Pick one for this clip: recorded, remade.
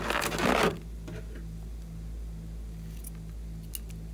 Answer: recorded